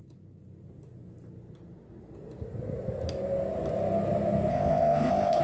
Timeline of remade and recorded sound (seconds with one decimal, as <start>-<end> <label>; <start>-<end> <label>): 0.0-4.5 recorded; 4.5-5.4 remade